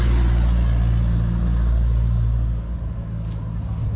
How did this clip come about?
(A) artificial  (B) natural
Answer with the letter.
B